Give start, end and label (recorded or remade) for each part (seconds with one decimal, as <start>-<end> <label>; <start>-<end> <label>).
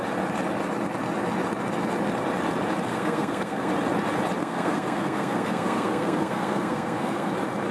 0.0-2.9 recorded; 2.9-3.7 remade; 3.7-4.4 recorded; 4.4-7.3 remade; 7.3-7.7 recorded